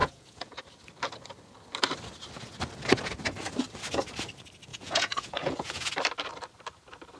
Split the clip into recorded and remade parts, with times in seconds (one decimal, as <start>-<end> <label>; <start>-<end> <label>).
0.0-0.6 remade; 0.6-4.7 recorded; 4.7-5.9 remade; 5.9-7.2 recorded